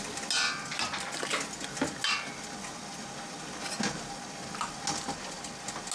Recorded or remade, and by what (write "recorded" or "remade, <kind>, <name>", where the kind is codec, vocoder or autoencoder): recorded